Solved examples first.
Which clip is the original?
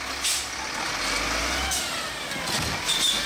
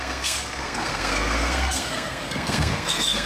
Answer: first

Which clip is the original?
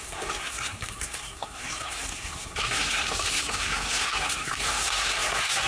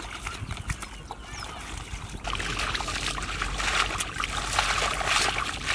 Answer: second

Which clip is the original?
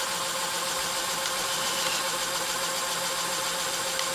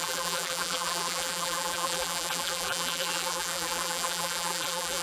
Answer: first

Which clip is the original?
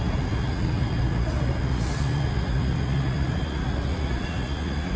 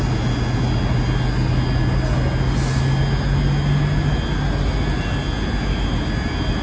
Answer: second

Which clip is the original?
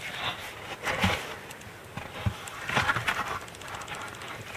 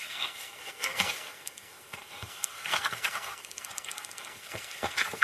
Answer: first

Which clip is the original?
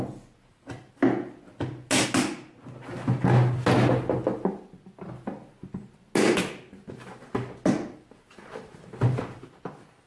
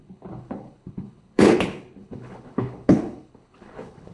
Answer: first